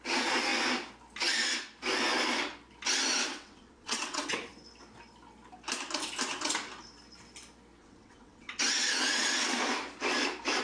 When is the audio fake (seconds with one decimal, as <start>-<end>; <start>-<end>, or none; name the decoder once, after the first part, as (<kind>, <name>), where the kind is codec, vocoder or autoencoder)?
3.3-4.5 (vocoder, WaveNeXt); 7.8-9.6